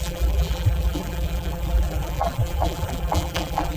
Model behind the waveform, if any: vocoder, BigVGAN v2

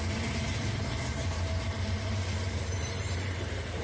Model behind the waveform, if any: vocoder, BigVGAN v2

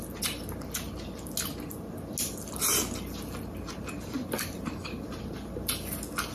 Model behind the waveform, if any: none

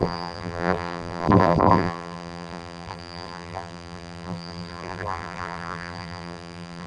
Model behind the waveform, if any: vocoder, BigVGAN v2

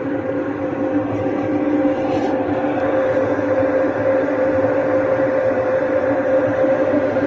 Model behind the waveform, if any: vocoder, BigVGAN v2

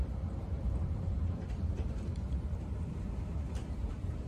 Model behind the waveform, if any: vocoder, BigVGAN v2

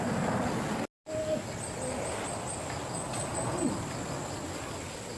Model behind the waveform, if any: none